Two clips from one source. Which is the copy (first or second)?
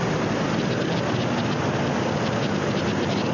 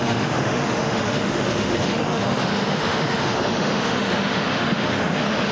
second